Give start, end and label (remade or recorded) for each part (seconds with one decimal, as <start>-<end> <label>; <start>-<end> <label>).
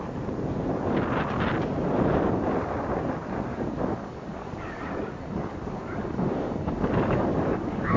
0.0-3.5 recorded; 3.5-8.0 remade